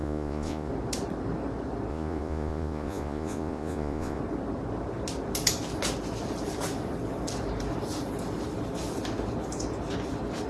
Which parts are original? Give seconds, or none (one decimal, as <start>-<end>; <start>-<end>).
0.7-1.9; 4.2-10.5